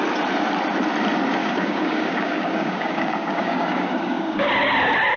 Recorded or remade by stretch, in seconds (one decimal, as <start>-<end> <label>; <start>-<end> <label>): 0.0-1.4 recorded; 1.4-4.5 remade; 4.5-5.2 recorded